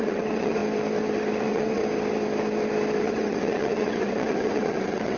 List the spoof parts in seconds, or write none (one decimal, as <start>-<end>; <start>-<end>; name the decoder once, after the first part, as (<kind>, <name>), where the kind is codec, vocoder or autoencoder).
0.0-0.6 (vocoder, WaveNeXt); 1.4-1.8; 3.0-5.2